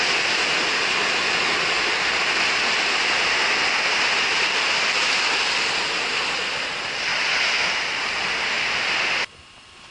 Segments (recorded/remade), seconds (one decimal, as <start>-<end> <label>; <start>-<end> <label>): 0.0-9.9 recorded